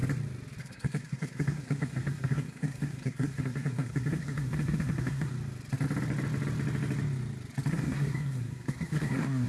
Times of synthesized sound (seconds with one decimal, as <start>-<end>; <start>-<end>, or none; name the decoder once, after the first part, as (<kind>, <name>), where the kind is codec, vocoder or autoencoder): 0.6-5.3 (codec, SNAC); 7.7-9.5